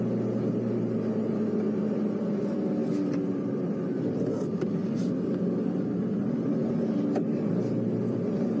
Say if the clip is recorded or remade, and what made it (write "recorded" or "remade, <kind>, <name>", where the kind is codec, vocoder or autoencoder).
recorded